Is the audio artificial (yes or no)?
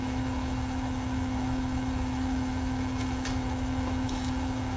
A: yes